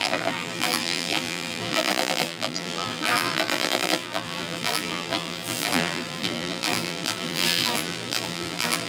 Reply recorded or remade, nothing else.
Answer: remade